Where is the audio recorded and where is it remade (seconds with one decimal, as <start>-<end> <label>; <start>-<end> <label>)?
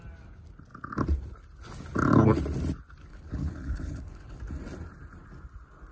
0.0-3.1 recorded; 3.1-4.4 remade; 4.4-5.9 recorded